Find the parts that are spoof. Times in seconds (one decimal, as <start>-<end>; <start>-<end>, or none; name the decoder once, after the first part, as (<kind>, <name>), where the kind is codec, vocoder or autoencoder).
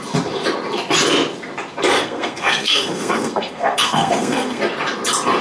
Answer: 2.0-4.6 (codec, SNAC)